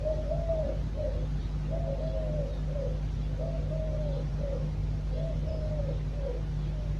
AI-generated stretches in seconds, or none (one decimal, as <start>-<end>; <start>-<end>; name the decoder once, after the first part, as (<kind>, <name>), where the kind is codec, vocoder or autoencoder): 4.8-5.8 (vocoder, BigVGAN v2)